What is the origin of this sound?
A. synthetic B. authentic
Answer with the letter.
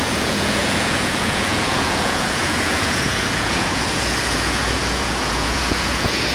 A